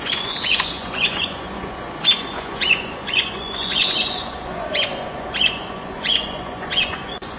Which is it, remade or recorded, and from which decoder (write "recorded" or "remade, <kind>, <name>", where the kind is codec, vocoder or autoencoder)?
remade, vocoder, Vocos